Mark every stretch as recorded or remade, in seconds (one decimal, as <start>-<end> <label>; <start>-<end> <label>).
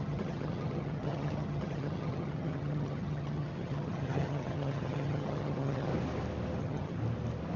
0.0-5.9 remade; 5.9-6.6 recorded; 6.6-7.0 remade; 7.0-7.6 recorded